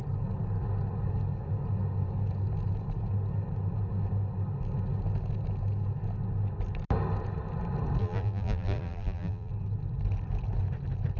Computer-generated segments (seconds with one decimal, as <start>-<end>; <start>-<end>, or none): 8.0-9.5